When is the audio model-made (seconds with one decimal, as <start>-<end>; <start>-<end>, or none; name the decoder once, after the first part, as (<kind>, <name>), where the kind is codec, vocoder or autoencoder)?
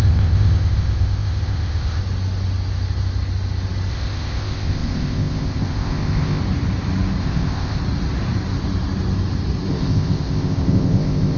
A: 0.0-2.0 (codec, ZipCodec); 3.9-6.4; 7.2-7.8; 9.7-11.4